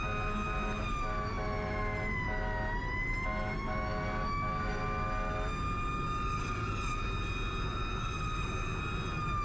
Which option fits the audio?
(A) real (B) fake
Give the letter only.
A